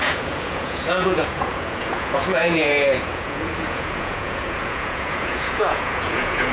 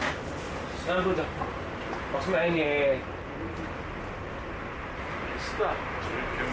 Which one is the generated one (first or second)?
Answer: first